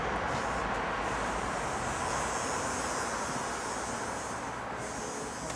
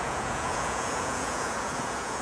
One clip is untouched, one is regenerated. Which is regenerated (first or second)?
second